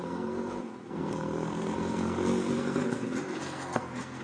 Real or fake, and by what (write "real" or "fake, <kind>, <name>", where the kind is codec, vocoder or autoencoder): fake, codec, SNAC